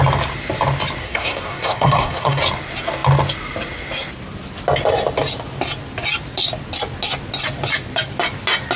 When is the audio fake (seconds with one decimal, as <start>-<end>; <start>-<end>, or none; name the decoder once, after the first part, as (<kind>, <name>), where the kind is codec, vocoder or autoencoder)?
1.0-2.4 (codec, SNAC)